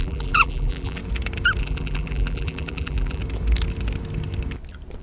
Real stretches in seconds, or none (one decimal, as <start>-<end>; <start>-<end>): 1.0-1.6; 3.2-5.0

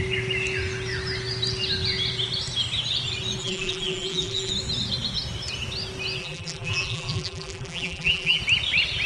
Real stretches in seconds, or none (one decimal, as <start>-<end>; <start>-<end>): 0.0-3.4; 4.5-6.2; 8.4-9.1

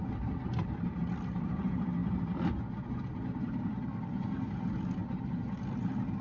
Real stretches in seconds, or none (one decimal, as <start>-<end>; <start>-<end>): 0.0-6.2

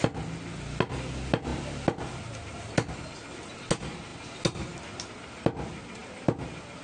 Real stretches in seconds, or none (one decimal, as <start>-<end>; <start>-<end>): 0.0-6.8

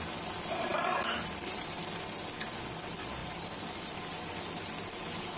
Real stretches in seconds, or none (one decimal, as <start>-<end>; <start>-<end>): 0.0-0.7; 1.8-3.2; 4.0-5.4

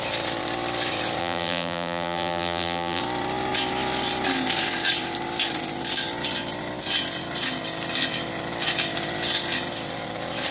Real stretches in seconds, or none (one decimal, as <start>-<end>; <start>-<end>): 0.0-1.2; 3.0-10.5

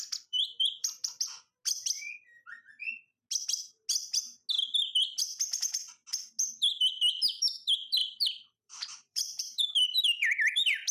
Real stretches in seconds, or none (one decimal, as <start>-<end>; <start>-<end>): 1.5-6.4

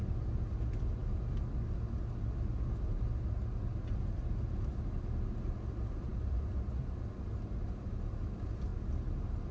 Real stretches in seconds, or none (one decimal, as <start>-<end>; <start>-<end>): 0.0-9.5